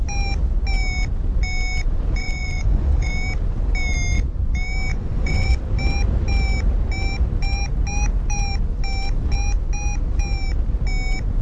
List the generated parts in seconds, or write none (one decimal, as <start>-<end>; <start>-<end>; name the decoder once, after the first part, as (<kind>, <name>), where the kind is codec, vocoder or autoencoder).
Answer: 2.2-3.1 (vocoder, Vocos); 4.9-5.6